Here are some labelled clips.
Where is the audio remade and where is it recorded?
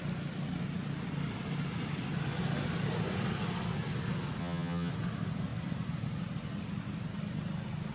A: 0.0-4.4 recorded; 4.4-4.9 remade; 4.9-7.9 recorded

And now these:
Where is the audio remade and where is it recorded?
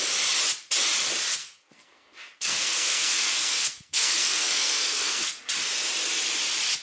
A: 0.0-1.4 recorded; 1.4-5.5 remade; 5.5-6.8 recorded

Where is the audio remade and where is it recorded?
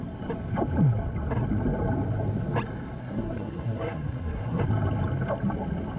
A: 0.0-3.0 recorded; 3.0-4.6 remade; 4.6-6.0 recorded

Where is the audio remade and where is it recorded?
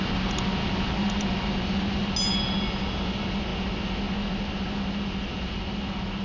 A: 0.0-6.2 recorded